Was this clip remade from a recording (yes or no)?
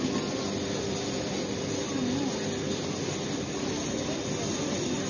no